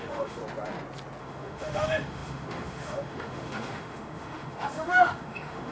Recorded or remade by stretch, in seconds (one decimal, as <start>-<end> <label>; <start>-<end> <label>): 0.0-0.4 remade; 0.4-1.2 recorded; 1.2-5.7 remade